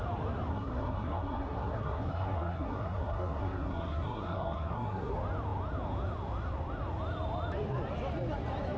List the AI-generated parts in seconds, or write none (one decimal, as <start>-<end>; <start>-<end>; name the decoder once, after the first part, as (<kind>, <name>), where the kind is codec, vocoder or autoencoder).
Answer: 0.5-5.1 (codec, SNAC)